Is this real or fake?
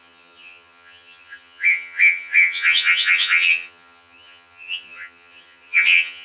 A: fake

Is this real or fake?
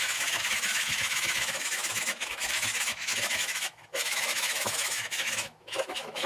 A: fake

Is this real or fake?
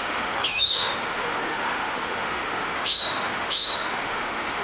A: fake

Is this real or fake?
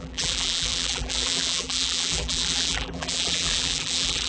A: fake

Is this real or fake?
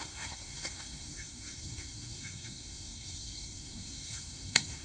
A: fake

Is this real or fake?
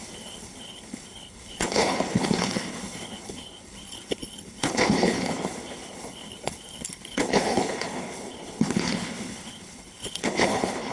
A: fake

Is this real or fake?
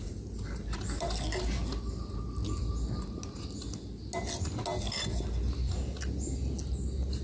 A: real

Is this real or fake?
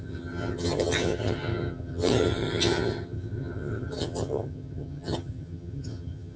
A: fake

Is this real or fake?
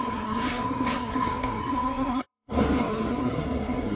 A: fake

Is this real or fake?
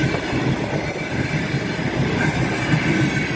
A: real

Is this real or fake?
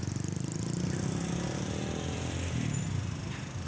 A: real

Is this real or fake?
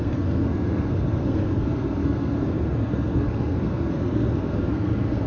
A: fake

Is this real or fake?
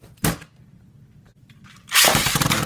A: fake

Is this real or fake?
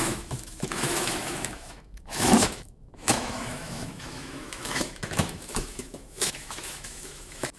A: fake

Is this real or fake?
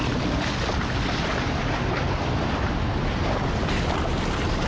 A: real